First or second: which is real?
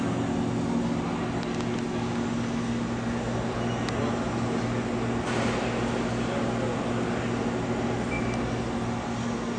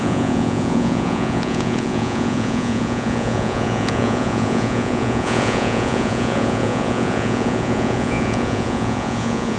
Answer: first